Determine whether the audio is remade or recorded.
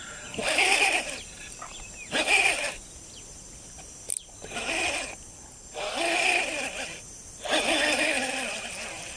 recorded